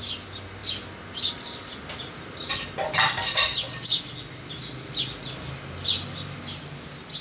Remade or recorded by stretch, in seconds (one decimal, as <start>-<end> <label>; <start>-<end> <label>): 0.0-7.2 recorded